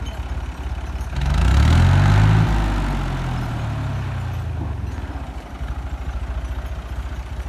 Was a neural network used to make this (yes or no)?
no